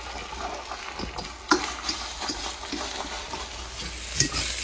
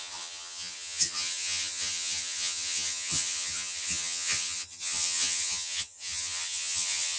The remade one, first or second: second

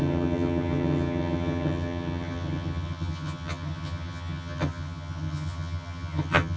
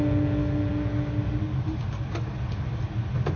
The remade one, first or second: first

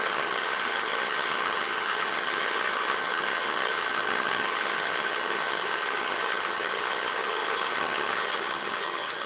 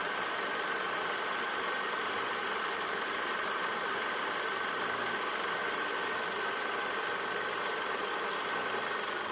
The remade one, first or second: first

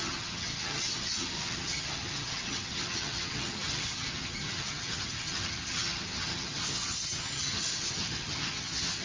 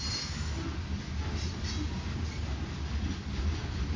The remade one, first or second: first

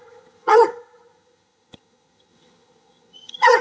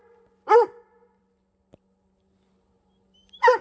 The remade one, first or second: first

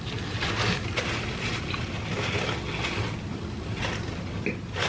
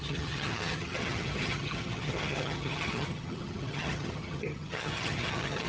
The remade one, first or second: second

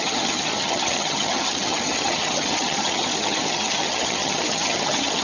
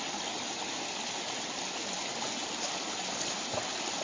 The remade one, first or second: first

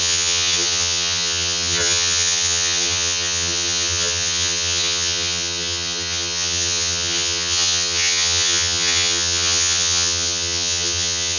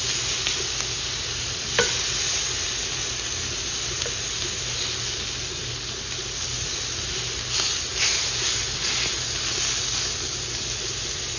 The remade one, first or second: first